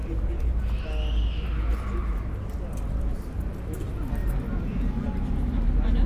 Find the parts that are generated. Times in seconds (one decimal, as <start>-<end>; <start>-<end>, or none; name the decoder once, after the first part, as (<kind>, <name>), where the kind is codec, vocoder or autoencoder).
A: 0.0-0.6 (vocoder, BigVGAN v2); 1.7-3.8